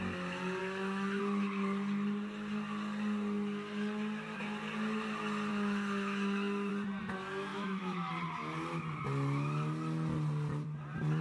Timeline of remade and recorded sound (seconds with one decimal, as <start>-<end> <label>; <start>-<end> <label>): 0.0-0.6 recorded; 0.6-1.2 remade; 1.2-5.5 recorded; 5.5-6.7 remade; 6.7-7.5 recorded; 7.5-8.1 remade; 8.1-11.2 recorded